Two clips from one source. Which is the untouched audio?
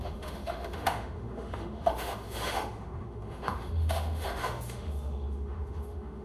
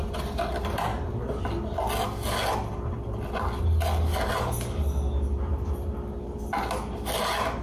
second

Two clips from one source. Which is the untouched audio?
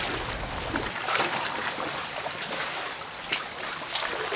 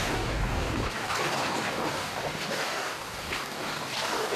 first